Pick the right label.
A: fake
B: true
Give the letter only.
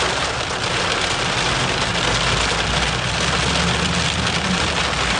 B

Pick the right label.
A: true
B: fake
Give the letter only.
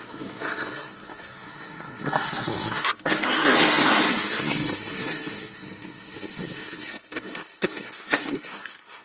B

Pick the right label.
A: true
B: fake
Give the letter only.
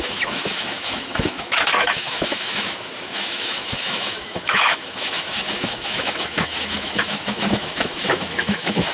B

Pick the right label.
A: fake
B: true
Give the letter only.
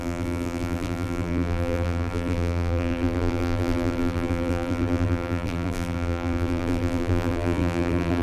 A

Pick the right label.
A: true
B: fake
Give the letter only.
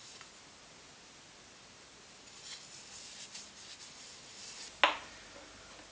A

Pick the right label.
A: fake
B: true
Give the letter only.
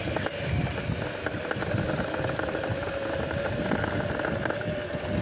B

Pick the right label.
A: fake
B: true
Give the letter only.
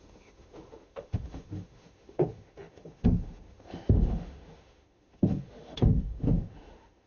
A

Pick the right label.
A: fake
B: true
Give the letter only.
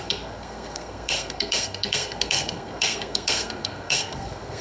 A